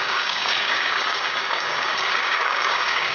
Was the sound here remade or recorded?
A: remade